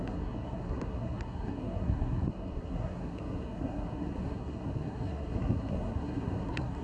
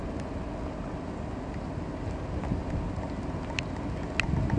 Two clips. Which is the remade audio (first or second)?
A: first